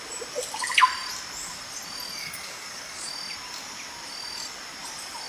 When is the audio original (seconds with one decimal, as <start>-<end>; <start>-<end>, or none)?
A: 0.0-2.2; 3.1-5.3